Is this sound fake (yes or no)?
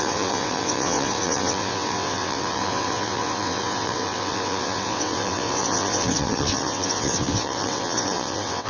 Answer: yes